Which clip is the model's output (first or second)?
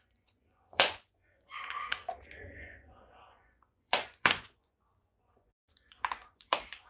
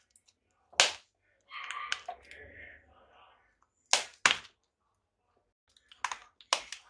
first